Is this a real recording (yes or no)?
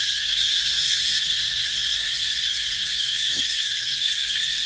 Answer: no